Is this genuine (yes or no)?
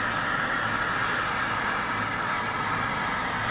yes